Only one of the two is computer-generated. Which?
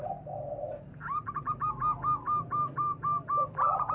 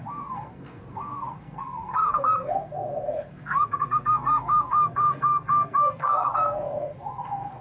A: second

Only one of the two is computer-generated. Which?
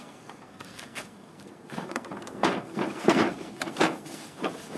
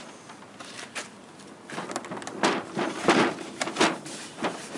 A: first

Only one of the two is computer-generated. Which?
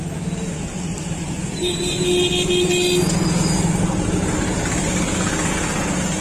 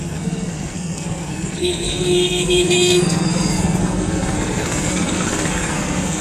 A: second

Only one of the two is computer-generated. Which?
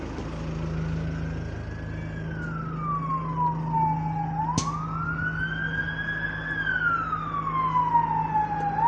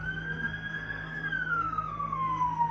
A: second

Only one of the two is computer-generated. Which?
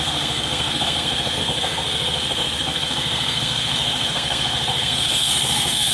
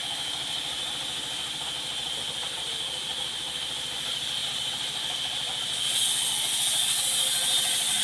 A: first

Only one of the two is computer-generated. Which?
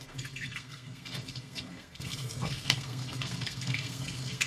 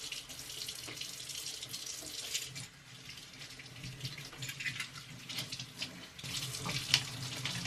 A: first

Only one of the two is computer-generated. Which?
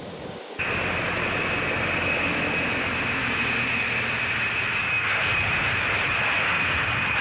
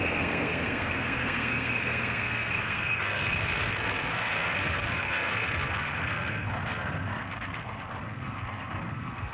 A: second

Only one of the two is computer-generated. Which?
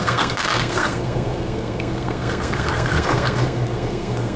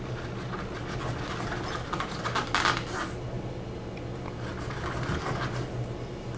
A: first